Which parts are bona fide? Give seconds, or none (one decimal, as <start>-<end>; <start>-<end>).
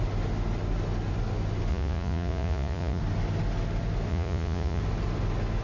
0.0-1.7; 3.0-4.1; 4.8-5.6